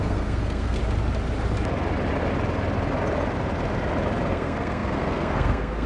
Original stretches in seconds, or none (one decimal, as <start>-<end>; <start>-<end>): 0.8-4.3